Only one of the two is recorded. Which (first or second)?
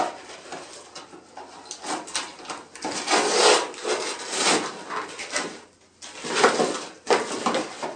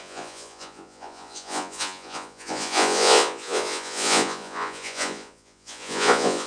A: first